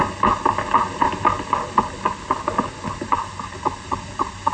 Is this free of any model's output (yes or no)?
yes